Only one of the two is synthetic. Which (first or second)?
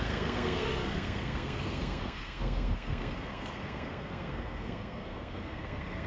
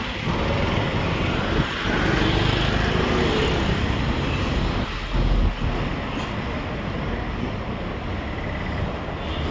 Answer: first